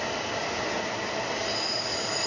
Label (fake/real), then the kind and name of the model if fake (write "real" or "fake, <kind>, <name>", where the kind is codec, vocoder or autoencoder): real